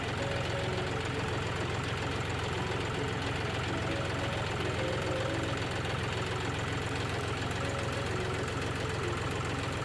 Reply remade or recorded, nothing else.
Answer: recorded